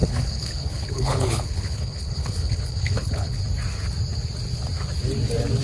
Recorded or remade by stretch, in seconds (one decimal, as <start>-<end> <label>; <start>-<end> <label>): 0.0-3.4 remade; 3.4-5.6 recorded

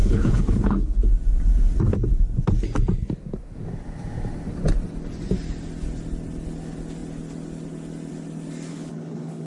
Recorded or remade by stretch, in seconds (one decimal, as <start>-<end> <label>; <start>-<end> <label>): 0.0-1.0 remade; 1.0-8.7 recorded; 8.7-9.5 remade

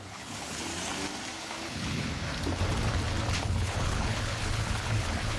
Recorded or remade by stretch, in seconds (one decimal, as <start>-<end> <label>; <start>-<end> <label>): 0.0-0.7 remade; 0.7-1.4 recorded; 1.4-2.2 remade; 2.2-3.4 recorded; 3.4-5.4 remade